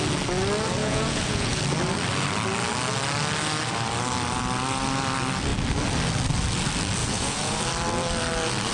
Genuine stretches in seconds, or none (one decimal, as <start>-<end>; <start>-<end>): 0.0-0.8; 1.6-7.0; 7.6-8.7